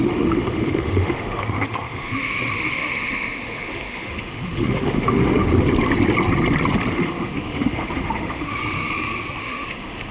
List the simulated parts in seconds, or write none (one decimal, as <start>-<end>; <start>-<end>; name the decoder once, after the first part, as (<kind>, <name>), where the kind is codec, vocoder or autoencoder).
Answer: 0.0-5.5 (autoencoder, DAC-VAE); 6.9-8.6; 9.4-10.1